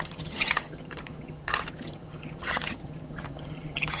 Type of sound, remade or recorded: remade